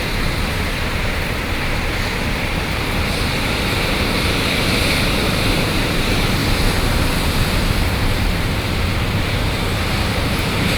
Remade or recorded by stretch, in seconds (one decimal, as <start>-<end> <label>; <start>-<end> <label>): 0.0-6.4 remade; 6.4-8.2 recorded; 8.2-10.8 remade